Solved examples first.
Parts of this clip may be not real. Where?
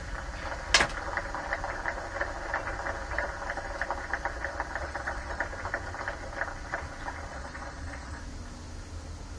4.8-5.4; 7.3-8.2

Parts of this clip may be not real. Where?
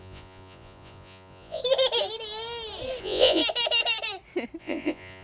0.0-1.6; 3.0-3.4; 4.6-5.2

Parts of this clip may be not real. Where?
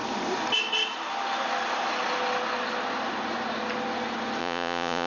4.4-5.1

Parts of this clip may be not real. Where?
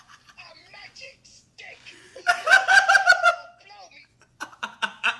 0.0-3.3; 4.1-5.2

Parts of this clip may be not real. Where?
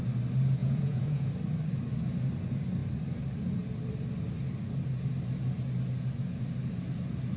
0.6-1.3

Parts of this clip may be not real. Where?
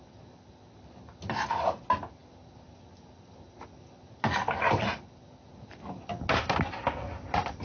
none